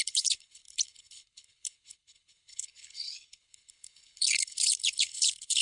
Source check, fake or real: fake